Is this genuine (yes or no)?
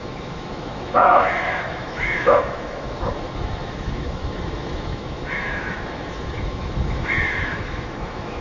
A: no